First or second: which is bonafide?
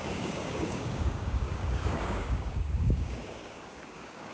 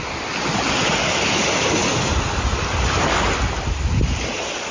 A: second